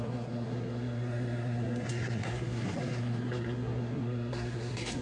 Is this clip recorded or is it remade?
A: remade